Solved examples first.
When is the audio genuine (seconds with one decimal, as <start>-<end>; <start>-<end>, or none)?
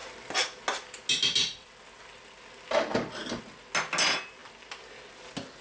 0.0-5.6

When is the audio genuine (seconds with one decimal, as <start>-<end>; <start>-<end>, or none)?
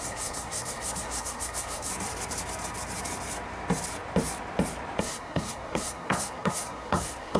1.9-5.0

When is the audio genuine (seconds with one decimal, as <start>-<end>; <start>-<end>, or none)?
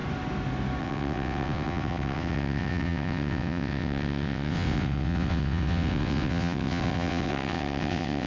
0.0-0.8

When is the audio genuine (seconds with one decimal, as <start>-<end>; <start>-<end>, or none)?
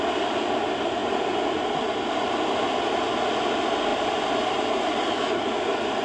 0.0-6.0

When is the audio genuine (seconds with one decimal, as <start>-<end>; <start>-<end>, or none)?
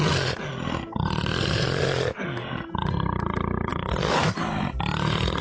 0.0-3.7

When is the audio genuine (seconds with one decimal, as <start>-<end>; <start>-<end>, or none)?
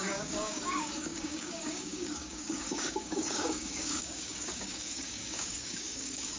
none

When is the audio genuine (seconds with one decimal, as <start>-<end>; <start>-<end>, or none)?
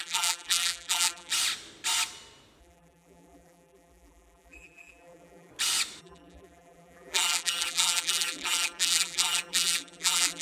1.3-2.6; 5.5-6.0